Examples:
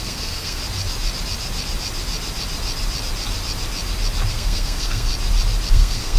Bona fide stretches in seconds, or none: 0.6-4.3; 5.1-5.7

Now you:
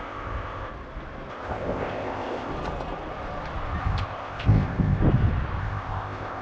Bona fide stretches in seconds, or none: 0.7-1.3; 2.5-3.8; 5.0-5.6

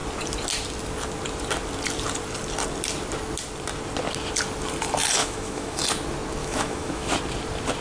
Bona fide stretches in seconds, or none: 0.0-5.2; 5.8-6.4; 7.1-7.8

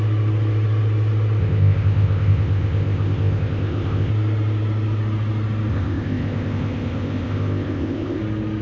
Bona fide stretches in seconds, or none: 0.0-1.4; 4.1-5.7; 8.2-8.6

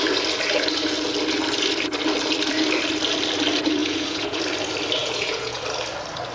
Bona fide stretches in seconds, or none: 0.0-3.8; 4.4-5.0; 5.6-6.3

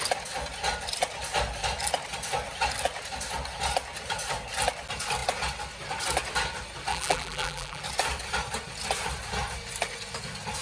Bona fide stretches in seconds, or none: 0.0-6.9; 7.8-10.6

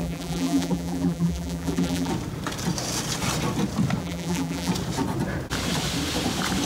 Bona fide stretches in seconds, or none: 2.1-4.0; 4.7-6.7